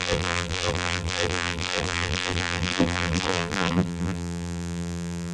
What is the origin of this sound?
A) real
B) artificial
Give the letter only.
B